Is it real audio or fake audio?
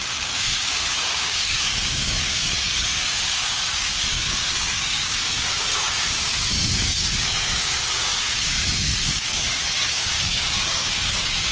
fake